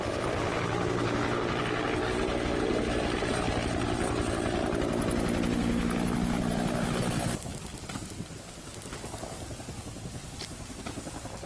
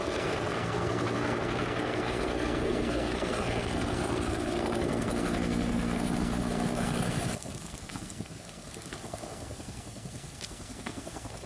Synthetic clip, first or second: second